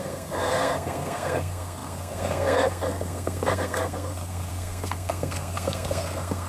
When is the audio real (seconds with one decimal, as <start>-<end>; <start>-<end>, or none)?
none